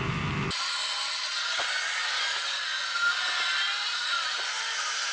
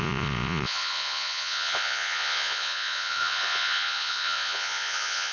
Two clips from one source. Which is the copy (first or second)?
second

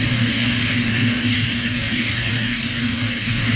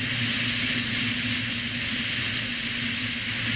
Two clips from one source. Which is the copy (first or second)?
first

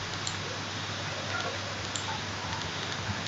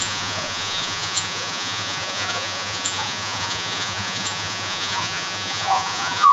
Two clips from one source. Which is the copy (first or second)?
second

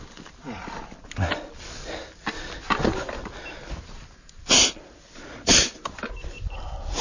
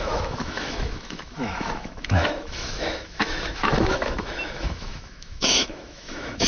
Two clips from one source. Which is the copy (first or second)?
second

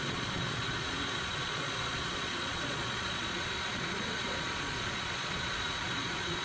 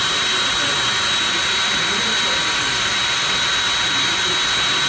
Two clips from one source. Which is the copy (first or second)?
first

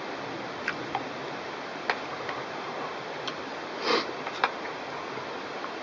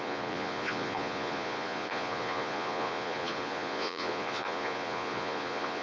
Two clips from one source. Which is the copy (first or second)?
second